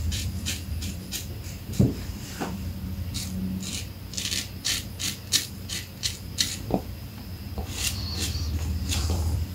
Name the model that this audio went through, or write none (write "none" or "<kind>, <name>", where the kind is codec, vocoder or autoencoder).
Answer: vocoder, BigVGAN v2